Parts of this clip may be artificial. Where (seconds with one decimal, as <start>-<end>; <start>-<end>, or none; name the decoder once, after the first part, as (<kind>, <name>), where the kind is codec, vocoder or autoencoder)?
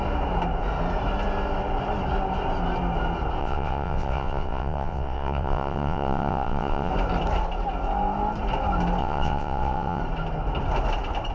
3.4-6.9 (vocoder, WaveNeXt); 9.0-10.0